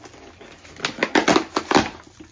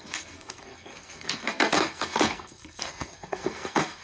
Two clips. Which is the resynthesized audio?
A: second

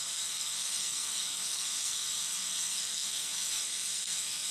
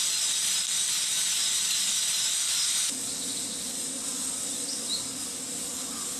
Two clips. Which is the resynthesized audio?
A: first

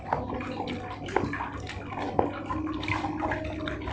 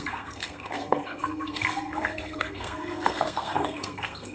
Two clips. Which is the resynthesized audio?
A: second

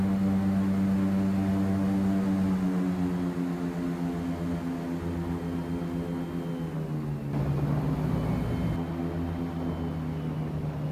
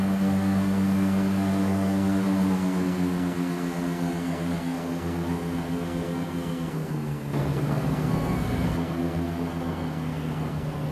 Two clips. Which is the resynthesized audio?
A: second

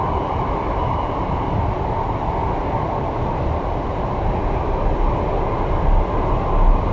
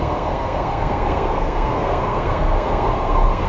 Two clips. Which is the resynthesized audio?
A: second